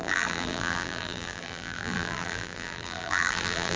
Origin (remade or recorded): remade